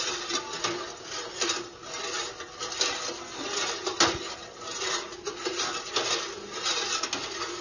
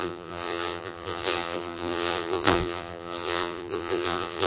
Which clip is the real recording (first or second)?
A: first